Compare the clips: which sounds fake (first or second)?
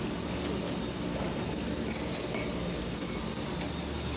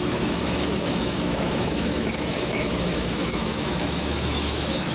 second